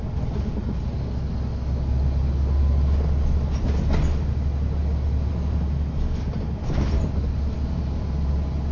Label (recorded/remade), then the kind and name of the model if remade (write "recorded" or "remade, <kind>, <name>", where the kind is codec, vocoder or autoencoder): recorded